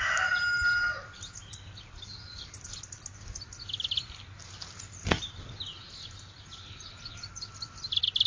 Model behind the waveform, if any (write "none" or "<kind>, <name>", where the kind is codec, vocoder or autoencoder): none